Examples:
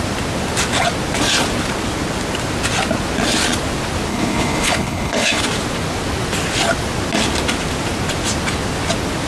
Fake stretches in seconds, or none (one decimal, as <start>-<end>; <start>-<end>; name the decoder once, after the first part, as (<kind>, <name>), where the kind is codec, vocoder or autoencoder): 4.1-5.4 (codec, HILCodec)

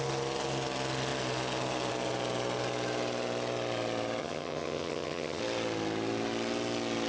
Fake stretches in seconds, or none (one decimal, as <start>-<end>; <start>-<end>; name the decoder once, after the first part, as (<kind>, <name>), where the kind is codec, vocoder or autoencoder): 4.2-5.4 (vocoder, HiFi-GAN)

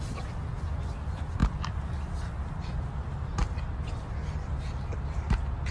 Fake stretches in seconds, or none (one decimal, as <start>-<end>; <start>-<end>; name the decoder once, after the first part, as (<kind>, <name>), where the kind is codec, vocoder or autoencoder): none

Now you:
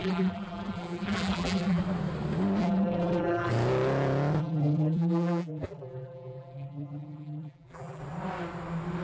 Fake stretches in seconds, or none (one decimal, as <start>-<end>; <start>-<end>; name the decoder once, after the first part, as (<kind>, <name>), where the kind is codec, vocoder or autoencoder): 0.0-1.8 (vocoder, BigVGAN v2); 2.6-3.5; 4.4-8.0

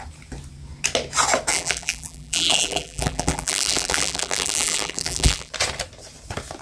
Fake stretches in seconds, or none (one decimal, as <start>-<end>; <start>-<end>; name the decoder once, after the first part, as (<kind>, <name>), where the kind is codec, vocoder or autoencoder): 1.5-5.5 (vocoder, BigVGAN v2)

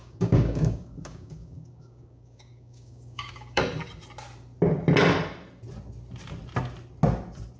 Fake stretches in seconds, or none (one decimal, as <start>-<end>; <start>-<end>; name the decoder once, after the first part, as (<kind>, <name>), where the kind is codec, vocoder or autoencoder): 0.0-3.6 (codec, DAC)

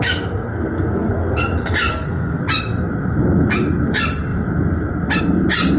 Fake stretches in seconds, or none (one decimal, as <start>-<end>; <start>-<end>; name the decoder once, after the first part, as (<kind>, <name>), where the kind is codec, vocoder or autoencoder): 0.5-1.1 (codec, SNAC); 1.9-2.4